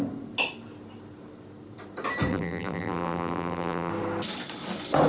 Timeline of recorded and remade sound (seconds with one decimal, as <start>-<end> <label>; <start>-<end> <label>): 0.0-2.3 recorded; 2.3-3.9 remade; 3.9-5.1 recorded